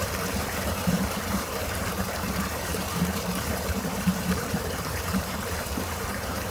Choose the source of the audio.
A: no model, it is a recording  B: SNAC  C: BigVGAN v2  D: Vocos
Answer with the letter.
C